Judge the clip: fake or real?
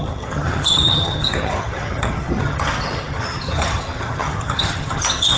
fake